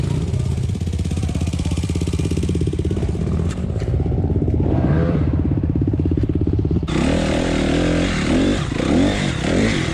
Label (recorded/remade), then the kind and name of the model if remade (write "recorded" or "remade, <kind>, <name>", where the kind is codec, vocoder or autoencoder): remade, vocoder, BigVGAN v2